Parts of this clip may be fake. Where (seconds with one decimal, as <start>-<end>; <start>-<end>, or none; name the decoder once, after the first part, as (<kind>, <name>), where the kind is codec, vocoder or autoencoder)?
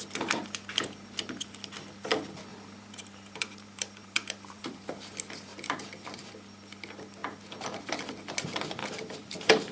2.5-4.9 (vocoder, BigVGAN v2); 8.8-9.7